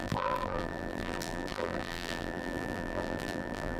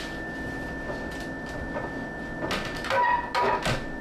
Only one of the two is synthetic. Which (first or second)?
first